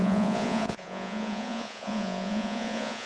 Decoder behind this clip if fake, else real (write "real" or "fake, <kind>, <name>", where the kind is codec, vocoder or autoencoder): fake, vocoder, Vocos